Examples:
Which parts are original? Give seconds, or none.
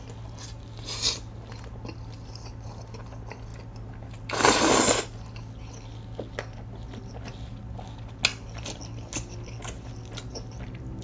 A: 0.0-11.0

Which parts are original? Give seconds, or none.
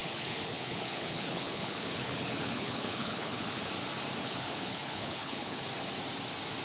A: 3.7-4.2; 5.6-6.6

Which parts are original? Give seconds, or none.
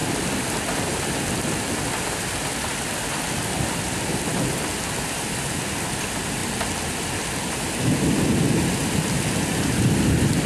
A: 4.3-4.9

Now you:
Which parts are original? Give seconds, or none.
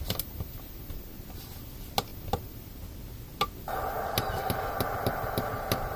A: 0.0-6.0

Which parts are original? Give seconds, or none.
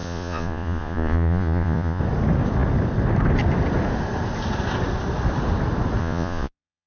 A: 2.0-6.0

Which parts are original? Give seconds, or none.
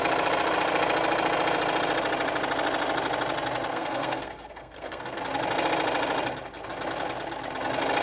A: 0.0-3.7; 5.2-8.0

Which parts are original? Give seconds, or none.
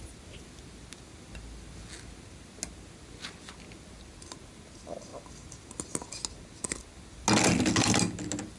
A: 0.0-8.6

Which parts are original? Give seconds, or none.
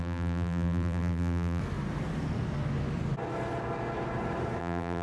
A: 1.6-4.6